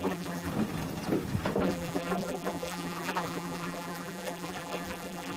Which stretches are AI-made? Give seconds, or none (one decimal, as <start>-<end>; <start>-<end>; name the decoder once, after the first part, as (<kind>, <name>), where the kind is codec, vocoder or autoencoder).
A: 0.0-0.5 (vocoder, BigVGAN v2); 1.6-5.4